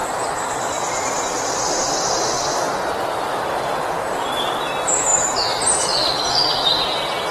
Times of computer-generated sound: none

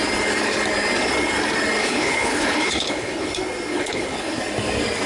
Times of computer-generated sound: 1.8-3.3 (codec, HILCodec); 3.7-4.4

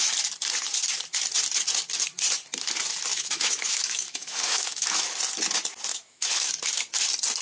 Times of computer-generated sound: 3.1-5.1 (autoencoder, DAC-VAE); 5.9-6.5

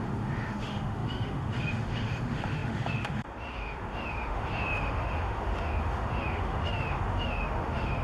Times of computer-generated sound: 0.0-8.0 (autoencoder, DAC-VAE)

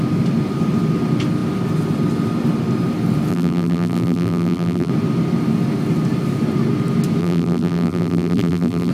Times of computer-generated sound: 3.3-4.9 (vocoder, BigVGAN v2); 7.2-8.9

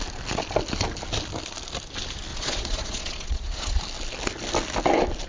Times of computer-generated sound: 2.3-3.8 (vocoder, Vocos)